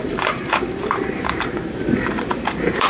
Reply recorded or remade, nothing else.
remade